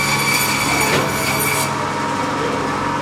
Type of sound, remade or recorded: recorded